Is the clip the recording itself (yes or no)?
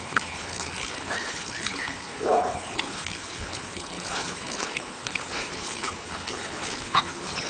no